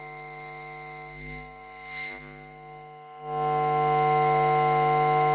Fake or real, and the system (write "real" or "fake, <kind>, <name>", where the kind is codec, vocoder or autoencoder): real